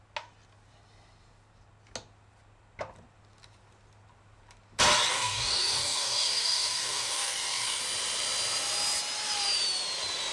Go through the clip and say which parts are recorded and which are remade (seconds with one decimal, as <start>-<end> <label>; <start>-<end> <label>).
0.0-5.1 recorded; 5.1-7.8 remade; 7.8-10.3 recorded